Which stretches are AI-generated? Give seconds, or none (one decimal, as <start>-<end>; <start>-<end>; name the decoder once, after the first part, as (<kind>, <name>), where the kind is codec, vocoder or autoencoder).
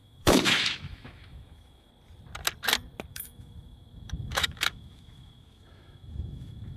0.0-1.9 (autoencoder, DAC-VAE); 3.1-6.8